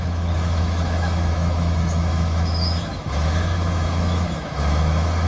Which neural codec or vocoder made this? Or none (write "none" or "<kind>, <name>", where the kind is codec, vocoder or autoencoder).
autoencoder, DAC-VAE